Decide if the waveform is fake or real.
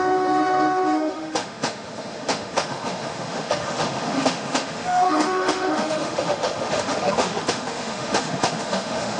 fake